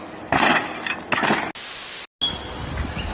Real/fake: real